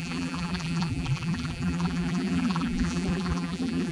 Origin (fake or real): fake